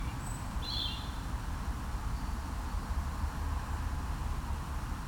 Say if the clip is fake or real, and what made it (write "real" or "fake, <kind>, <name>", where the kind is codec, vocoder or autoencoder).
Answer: real